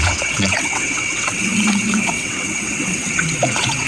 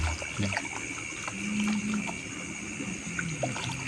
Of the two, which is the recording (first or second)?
second